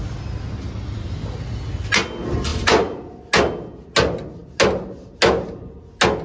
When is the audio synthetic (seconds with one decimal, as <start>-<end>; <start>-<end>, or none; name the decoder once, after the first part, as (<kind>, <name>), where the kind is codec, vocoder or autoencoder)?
none